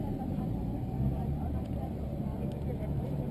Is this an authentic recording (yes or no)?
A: no